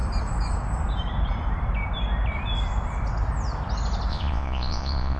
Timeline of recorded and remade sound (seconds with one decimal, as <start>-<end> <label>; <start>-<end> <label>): 0.0-4.1 recorded; 4.1-5.2 remade